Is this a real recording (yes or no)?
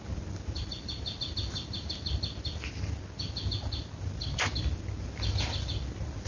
yes